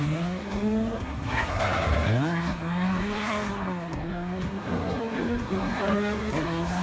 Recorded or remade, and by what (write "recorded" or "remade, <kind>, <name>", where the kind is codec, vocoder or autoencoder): remade, codec, SNAC